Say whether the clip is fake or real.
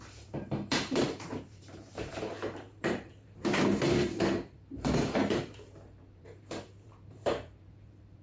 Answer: fake